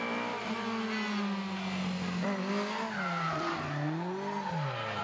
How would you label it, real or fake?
real